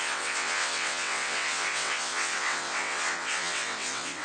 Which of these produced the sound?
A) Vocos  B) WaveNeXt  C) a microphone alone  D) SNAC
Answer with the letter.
B